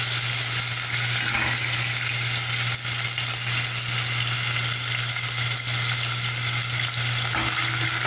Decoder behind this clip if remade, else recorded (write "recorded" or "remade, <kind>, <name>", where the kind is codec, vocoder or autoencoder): recorded